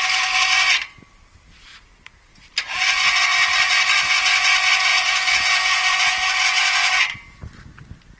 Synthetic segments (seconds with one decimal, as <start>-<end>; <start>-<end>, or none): 4.9-6.9